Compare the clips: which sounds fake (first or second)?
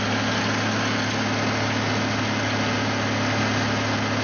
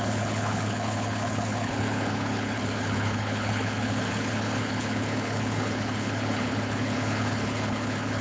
second